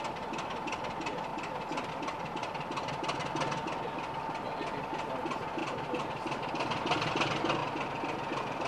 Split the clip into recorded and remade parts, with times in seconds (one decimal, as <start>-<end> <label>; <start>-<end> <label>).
0.0-2.4 recorded; 2.4-2.9 remade; 2.9-5.6 recorded; 5.6-6.5 remade; 6.5-8.7 recorded